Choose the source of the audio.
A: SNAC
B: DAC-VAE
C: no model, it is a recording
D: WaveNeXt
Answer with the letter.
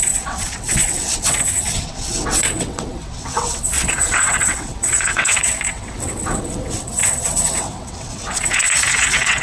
D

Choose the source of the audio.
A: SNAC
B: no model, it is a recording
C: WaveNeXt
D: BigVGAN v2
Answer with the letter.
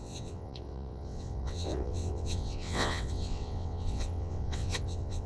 C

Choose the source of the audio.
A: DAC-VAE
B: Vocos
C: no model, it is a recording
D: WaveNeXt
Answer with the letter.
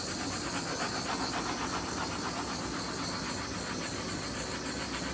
C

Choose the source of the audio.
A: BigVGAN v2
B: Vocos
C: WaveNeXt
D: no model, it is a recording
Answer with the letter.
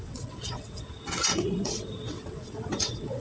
C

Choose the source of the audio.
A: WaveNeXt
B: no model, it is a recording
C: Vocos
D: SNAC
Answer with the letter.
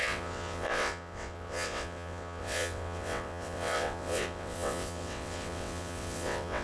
A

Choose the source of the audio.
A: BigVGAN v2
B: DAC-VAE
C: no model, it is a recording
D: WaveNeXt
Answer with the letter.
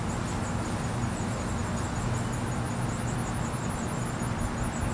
C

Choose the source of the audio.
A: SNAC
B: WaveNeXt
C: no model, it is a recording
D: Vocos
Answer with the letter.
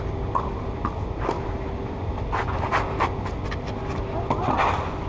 C